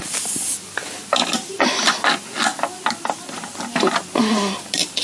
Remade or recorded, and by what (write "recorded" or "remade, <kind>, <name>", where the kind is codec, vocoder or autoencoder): recorded